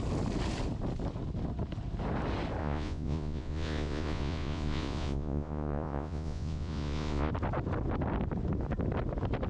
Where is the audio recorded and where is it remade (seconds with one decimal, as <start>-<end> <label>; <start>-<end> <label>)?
0.0-2.6 recorded; 2.6-7.3 remade; 7.3-9.5 recorded